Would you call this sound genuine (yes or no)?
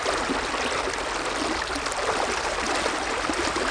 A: yes